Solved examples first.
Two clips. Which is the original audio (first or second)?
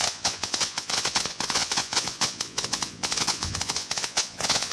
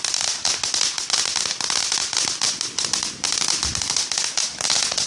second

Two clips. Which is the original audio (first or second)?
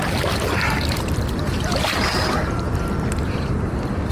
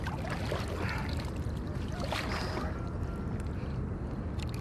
second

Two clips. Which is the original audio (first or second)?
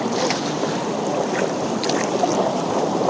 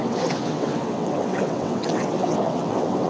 first